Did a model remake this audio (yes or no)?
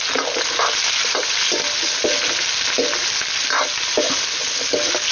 no